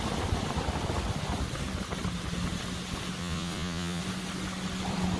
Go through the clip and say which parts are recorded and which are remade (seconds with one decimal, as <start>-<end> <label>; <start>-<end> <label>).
0.0-3.2 recorded; 3.2-4.0 remade; 4.0-5.2 recorded